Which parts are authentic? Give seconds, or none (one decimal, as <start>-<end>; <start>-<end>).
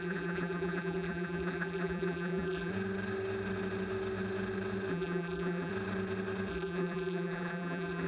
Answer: 2.7-4.9; 5.7-6.5